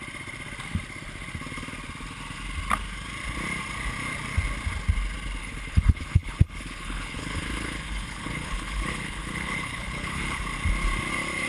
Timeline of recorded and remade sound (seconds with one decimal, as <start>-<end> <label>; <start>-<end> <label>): 0.0-5.4 recorded; 5.4-10.4 remade; 10.4-11.5 recorded

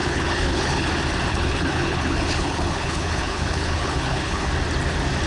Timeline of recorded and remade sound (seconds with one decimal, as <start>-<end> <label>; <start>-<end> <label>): 0.0-0.9 remade; 0.9-1.3 recorded; 1.3-4.5 remade; 4.5-5.3 recorded

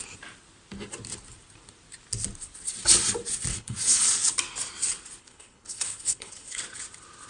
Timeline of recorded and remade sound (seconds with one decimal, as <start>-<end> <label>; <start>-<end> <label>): 0.0-3.5 recorded; 3.5-4.0 remade; 4.0-5.2 recorded; 5.2-6.6 remade; 6.6-7.3 recorded

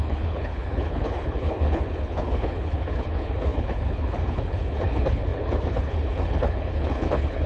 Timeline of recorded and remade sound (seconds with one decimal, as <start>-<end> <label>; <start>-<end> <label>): 0.0-7.5 remade

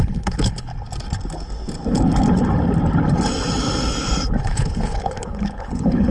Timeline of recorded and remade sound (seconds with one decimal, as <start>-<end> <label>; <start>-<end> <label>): 0.0-0.7 remade; 0.7-4.4 recorded; 4.4-6.1 remade